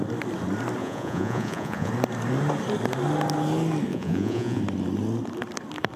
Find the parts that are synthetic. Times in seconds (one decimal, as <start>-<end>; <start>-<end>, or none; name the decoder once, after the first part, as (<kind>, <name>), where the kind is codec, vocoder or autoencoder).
0.8-1.9 (vocoder, Vocos); 3.9-4.6